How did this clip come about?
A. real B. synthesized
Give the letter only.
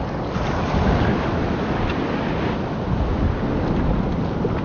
A